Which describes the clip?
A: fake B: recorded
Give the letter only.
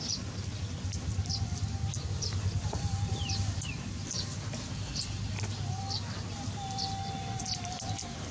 A